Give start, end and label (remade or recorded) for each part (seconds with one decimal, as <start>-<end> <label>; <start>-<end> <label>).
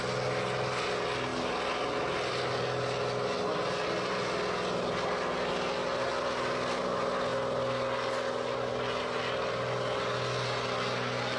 0.0-11.4 recorded